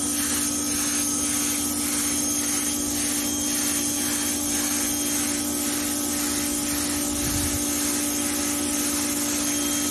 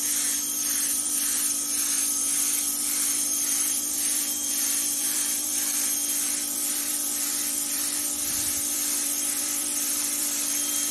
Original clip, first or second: first